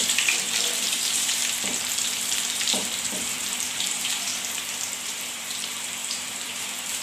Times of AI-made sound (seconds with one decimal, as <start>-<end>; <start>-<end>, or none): 0.0-1.4; 2.8-4.3; 5.0-7.0